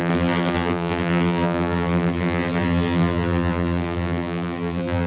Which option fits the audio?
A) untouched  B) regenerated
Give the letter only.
B